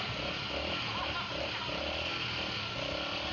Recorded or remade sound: recorded